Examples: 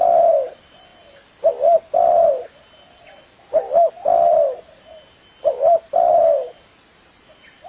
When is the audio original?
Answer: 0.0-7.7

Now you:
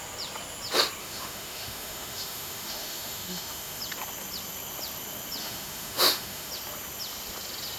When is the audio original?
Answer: 0.0-1.0; 3.8-5.4; 6.5-7.8

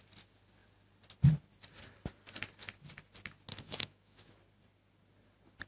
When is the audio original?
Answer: 0.0-3.5; 4.3-5.7

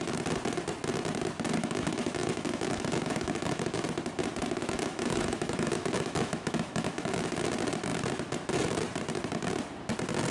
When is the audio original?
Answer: 0.0-1.6; 3.8-4.6; 7.3-10.3

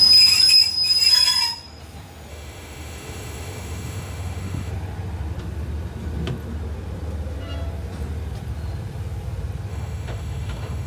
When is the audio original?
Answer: 0.0-2.3; 4.7-9.7